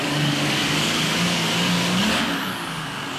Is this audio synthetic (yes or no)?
yes